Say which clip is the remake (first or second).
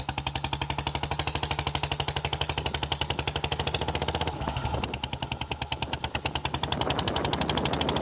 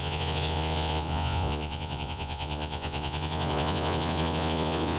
second